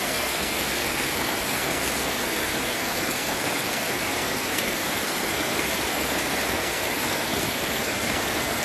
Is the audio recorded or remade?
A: remade